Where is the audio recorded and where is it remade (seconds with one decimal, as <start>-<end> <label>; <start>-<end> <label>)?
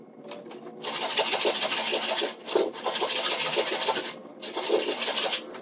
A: 0.0-5.6 recorded